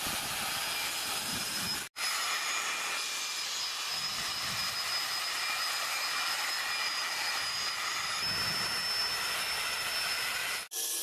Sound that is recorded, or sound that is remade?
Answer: recorded